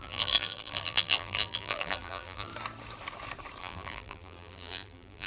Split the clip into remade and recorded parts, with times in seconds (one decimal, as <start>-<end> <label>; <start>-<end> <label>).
0.0-2.5 remade; 2.5-3.6 recorded; 3.6-5.3 remade

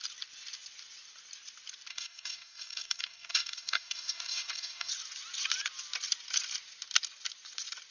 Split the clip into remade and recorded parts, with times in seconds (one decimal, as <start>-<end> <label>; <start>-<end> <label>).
0.0-1.9 recorded; 1.9-4.9 remade; 4.9-7.9 recorded

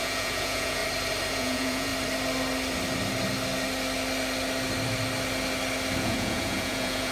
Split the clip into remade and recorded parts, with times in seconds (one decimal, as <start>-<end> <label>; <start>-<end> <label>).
0.0-0.8 remade; 0.8-1.3 recorded; 1.3-1.9 remade; 1.9-6.0 recorded; 6.0-7.1 remade

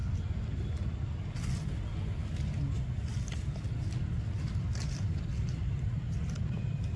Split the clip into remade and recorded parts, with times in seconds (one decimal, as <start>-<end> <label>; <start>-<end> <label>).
0.0-7.0 recorded

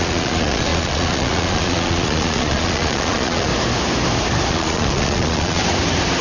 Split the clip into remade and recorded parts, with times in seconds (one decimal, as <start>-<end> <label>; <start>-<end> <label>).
0.0-3.5 remade; 3.5-4.5 recorded; 4.5-5.6 remade; 5.6-6.2 recorded